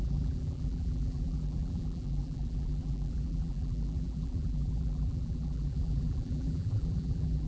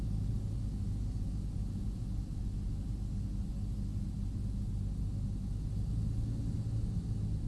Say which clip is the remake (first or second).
first